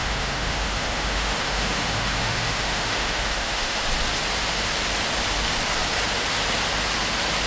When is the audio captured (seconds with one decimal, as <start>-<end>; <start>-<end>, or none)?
3.8-7.5